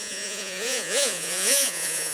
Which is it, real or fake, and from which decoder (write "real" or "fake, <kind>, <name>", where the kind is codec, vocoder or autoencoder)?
fake, vocoder, Vocos